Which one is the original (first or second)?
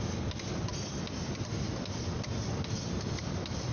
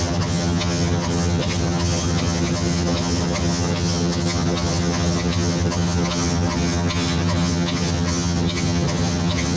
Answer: first